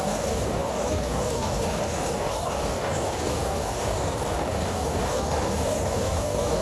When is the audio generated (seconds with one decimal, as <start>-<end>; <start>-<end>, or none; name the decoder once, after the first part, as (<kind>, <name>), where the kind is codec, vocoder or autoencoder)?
0.0-6.6 (codec, DAC)